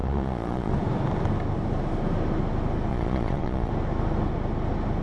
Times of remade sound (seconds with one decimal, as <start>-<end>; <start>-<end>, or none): 0.0-0.7; 2.9-3.7